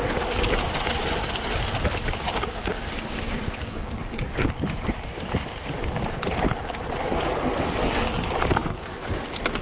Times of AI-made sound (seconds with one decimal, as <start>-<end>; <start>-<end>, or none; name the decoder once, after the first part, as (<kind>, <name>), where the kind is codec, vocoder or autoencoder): 2.3-4.5 (codec, DAC)